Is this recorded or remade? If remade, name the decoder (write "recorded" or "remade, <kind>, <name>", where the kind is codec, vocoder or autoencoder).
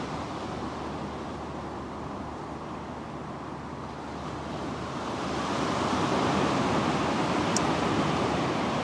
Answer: recorded